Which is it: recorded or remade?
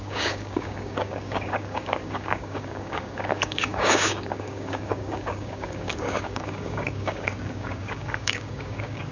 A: remade